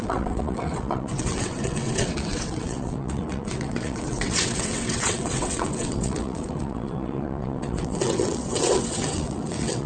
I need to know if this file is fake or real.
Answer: fake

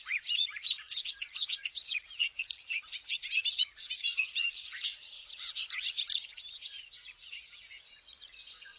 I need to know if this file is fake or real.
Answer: fake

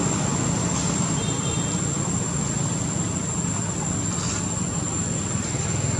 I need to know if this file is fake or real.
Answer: real